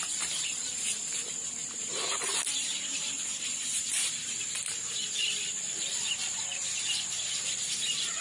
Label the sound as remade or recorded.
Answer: remade